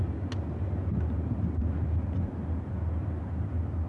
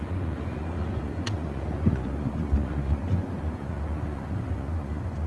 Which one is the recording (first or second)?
first